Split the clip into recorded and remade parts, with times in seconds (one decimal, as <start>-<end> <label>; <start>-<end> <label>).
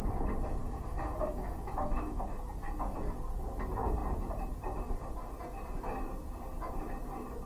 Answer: 0.0-0.6 recorded; 0.6-2.2 remade; 2.2-7.5 recorded